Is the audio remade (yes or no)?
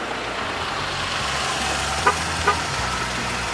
no